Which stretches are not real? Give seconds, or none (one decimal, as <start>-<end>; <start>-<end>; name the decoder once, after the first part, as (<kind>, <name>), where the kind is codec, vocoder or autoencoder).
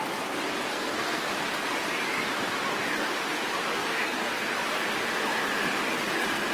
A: 0.7-1.3 (codec, SNAC); 3.8-4.5